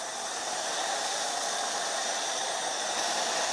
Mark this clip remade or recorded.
remade